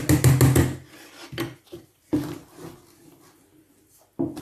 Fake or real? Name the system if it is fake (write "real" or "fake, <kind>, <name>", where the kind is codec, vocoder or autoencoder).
real